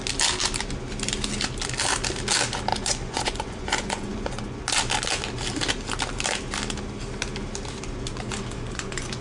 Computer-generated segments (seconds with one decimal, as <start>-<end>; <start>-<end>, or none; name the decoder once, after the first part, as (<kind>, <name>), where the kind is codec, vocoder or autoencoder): 2.7-4.6 (vocoder, Vocos); 8.1-9.2